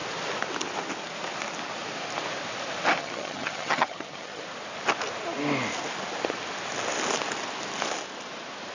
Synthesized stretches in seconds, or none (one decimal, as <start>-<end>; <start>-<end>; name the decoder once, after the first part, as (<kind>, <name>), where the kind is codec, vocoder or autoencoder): 3.0-4.4 (vocoder, HiFi-GAN)